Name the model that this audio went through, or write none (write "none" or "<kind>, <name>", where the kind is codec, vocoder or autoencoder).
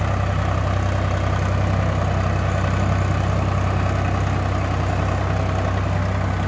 none